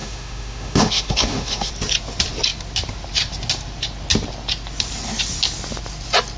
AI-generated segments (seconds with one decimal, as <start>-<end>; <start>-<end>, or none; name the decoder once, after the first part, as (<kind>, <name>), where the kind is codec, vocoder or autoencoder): 0.0-1.7 (autoencoder, DAC-VAE)